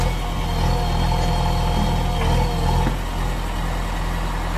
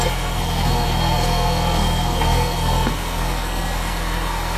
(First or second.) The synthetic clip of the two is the second